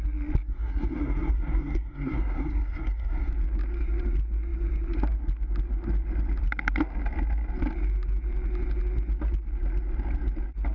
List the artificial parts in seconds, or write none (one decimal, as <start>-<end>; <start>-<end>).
0.5-3.3